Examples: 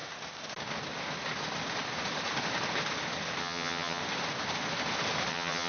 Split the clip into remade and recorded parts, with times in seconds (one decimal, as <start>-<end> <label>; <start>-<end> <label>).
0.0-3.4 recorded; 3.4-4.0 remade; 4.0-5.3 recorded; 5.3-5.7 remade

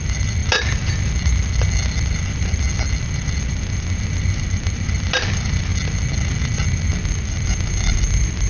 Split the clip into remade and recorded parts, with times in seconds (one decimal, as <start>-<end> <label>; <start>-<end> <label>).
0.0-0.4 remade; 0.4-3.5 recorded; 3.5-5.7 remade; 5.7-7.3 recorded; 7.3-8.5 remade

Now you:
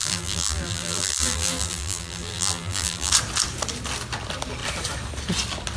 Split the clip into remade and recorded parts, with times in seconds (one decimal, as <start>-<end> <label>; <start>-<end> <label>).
0.0-3.1 remade; 3.1-5.8 recorded

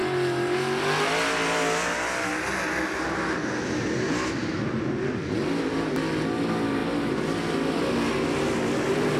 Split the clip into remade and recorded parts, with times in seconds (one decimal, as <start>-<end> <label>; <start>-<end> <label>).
0.0-9.2 recorded

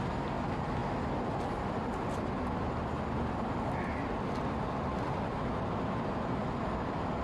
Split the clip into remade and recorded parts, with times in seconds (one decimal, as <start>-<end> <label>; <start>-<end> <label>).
0.0-7.2 recorded